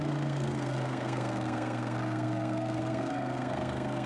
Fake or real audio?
fake